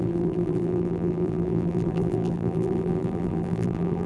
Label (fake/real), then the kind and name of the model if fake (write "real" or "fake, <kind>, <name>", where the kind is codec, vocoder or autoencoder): fake, vocoder, BigVGAN v2